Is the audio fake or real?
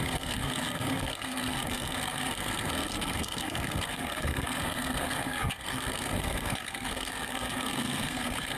fake